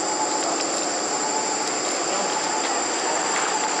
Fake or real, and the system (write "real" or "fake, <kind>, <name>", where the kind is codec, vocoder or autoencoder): real